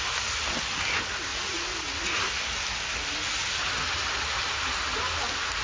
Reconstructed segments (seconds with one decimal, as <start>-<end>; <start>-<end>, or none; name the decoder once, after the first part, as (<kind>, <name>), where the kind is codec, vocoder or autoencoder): 1.3-2.3 (vocoder, Vocos)